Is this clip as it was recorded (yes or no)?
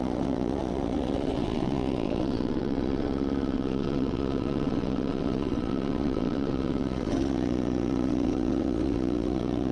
no